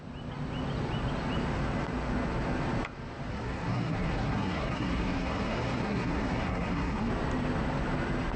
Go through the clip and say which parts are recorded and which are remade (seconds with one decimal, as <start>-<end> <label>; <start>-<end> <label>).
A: 0.0-3.3 recorded; 3.3-7.1 remade; 7.1-8.4 recorded